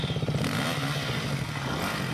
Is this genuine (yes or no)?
yes